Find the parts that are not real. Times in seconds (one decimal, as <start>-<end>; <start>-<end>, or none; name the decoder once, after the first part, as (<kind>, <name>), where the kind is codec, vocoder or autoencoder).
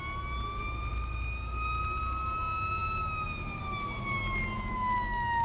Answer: none